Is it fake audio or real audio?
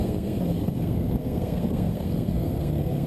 fake